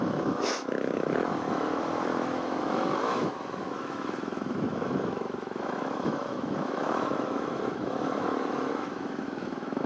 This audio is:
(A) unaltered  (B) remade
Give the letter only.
B